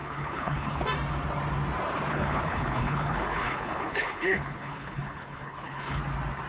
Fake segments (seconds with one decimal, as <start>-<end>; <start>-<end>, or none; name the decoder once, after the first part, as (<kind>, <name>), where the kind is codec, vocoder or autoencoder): 0.0-0.8 (codec, HILCodec); 2.1-6.0